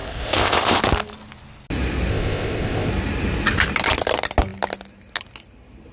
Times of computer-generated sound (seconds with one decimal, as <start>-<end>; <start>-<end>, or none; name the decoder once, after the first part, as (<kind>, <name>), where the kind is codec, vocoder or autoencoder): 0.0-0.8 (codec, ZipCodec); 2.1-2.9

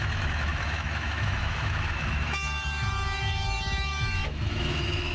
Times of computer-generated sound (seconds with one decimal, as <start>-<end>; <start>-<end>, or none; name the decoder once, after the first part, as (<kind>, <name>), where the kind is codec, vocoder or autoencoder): 0.0-5.1 (autoencoder, DAC-VAE)

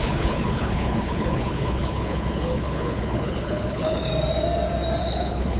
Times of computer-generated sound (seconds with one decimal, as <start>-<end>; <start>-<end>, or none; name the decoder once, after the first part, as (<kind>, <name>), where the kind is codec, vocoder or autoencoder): 0.0-4.1 (codec, HILCodec); 5.0-5.6

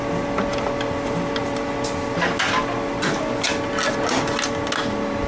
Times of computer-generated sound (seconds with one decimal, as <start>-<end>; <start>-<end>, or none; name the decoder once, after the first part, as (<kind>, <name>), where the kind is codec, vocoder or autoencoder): none